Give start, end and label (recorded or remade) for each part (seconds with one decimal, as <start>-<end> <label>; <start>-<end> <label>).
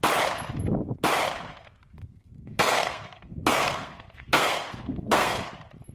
0.0-2.0 recorded; 2.0-5.5 remade; 5.5-5.9 recorded